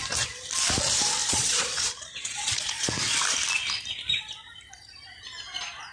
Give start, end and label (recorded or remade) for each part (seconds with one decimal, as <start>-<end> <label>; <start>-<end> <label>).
0.0-1.2 recorded; 1.2-2.9 remade; 2.9-5.9 recorded